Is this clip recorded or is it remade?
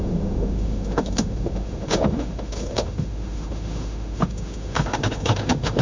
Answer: remade